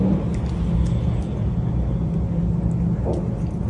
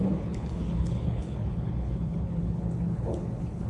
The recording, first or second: first